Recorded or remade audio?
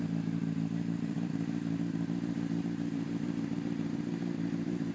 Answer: remade